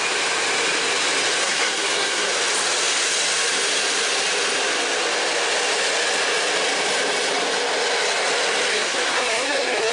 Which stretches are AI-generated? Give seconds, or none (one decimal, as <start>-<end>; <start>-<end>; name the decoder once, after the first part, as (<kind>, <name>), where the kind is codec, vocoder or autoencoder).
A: 1.4-2.3 (codec, SNAC); 8.7-9.9